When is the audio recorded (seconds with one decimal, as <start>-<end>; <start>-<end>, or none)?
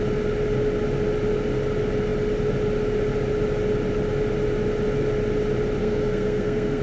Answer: 0.0-5.8